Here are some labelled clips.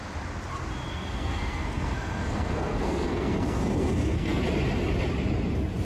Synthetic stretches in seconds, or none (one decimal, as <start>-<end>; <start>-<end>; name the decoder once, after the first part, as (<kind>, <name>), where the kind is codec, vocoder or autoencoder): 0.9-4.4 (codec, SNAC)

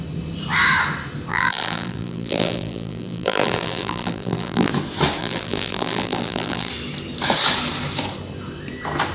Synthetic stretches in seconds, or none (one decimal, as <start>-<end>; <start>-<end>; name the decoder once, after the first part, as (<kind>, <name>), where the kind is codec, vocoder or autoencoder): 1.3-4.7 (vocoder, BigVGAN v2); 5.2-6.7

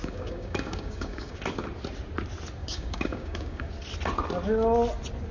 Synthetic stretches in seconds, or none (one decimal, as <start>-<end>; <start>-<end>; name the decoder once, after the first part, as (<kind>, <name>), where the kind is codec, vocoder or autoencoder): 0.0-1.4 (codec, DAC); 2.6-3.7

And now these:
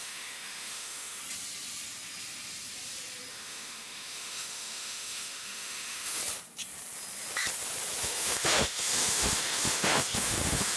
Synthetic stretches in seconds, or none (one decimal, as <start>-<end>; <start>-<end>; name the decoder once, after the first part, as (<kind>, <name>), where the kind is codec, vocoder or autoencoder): 0.0-1.2 (autoencoder, DAC-VAE); 3.3-6.2; 8.0-10.8

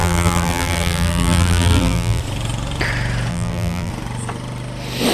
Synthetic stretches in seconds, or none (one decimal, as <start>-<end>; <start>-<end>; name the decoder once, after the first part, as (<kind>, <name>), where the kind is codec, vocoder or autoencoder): 0.0-2.2 (vocoder, BigVGAN v2); 3.3-3.9

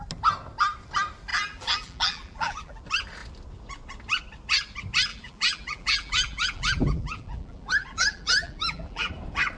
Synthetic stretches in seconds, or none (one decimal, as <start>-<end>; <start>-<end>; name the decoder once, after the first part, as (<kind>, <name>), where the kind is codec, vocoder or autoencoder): 1.3-2.8 (vocoder, BigVGAN v2); 5.1-9.1

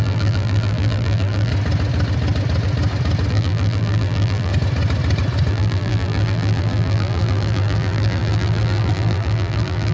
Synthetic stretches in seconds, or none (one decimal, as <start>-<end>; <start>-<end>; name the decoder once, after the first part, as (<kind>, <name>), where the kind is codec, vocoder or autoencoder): 0.0-1.5 (vocoder, BigVGAN v2); 3.3-4.5; 5.5-9.9

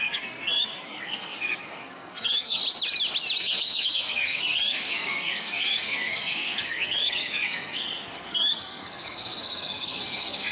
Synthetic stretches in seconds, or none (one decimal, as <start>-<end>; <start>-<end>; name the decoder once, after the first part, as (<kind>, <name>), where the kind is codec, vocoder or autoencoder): 0.0-2.6 (codec, SNAC); 3.4-10.5